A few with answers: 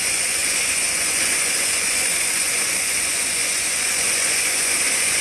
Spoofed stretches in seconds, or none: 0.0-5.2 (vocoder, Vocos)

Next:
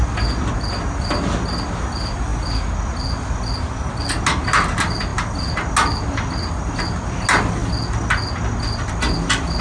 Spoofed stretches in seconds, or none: none

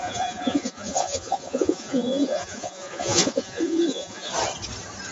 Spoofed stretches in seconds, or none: 0.0-4.3 (vocoder, Vocos)

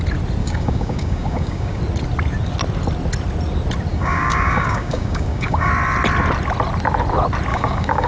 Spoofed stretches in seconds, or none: 0.4-1.8 (codec, DAC); 3.9-5.7; 7.5-8.1

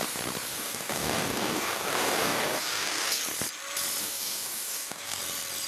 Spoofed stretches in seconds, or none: 0.5-3.2 (codec, DAC); 4.0-5.2

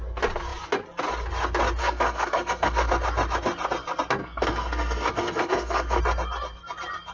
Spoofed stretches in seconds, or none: 1.8-2.9 (codec, SNAC); 4.2-6.0